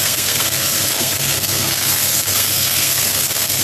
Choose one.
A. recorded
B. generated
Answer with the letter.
B